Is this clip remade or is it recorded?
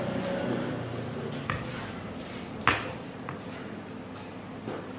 recorded